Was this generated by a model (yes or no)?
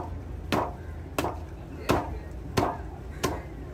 no